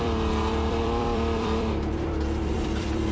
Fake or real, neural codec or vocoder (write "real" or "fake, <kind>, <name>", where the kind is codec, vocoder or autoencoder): fake, vocoder, BigVGAN v2